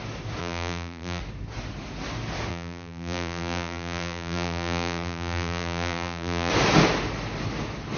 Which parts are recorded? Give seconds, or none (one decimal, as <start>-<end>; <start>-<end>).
0.0-0.4; 1.2-2.5; 6.5-8.0